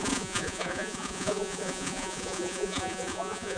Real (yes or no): no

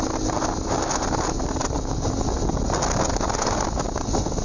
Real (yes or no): yes